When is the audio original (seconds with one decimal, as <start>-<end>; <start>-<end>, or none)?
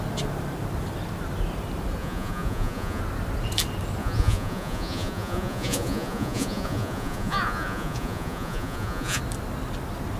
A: 0.0-2.0; 3.0-4.0; 9.2-10.2